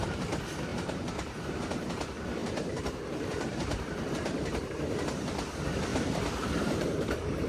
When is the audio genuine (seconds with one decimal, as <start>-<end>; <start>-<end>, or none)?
0.0-0.7; 1.7-2.4; 4.7-5.9